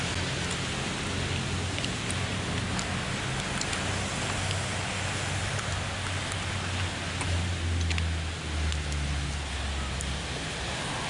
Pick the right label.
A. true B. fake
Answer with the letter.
A